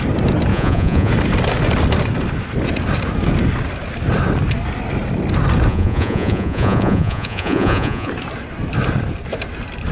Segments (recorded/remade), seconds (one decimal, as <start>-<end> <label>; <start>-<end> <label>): 0.0-0.5 recorded; 0.5-1.1 remade; 1.1-5.7 recorded; 5.7-8.1 remade; 8.1-9.9 recorded